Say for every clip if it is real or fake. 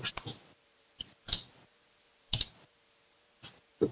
real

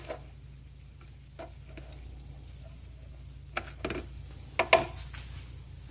real